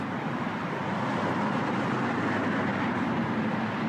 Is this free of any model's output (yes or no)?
yes